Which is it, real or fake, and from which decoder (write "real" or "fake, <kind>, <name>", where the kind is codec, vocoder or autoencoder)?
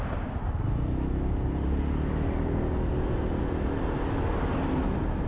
real